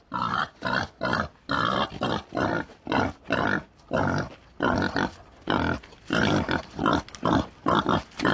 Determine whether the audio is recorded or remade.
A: recorded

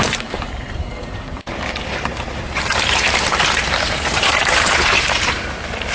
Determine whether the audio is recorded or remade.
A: remade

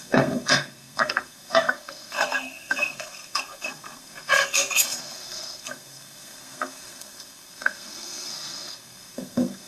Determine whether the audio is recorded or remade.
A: remade